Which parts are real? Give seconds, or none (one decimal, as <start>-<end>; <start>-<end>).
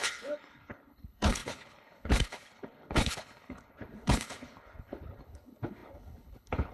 none